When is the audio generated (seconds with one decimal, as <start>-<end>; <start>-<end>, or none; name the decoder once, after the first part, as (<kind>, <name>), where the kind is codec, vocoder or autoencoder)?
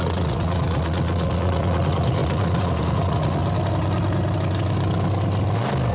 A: 0.0-3.4 (vocoder, Vocos)